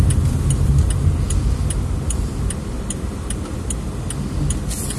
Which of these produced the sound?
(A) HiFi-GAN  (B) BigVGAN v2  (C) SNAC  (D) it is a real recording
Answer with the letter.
D